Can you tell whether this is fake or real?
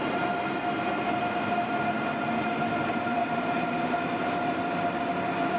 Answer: real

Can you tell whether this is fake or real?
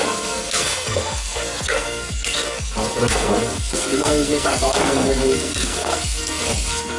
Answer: fake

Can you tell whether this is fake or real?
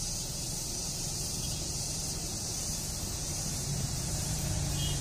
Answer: fake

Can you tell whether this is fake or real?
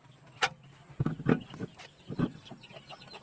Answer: real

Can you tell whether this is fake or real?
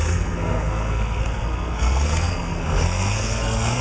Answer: fake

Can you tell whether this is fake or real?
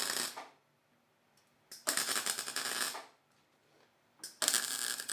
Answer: real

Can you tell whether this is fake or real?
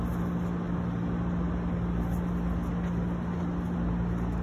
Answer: real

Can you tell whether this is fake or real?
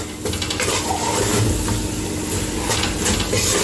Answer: real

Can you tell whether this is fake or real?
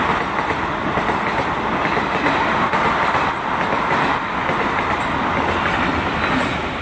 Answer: real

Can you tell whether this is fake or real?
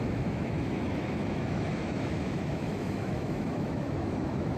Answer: fake